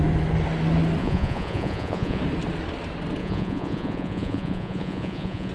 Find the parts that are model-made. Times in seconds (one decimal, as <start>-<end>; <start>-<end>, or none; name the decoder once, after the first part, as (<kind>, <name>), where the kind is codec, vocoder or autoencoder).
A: 1.0-2.2 (vocoder, Vocos); 3.2-5.5